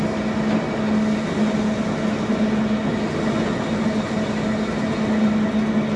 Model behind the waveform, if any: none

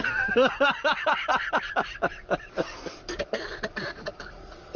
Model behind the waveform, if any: none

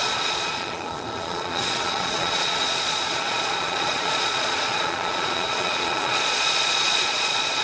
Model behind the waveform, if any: vocoder, Vocos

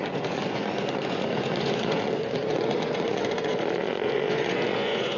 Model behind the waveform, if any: vocoder, Vocos